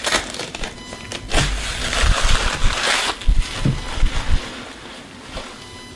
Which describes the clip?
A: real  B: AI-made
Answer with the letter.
A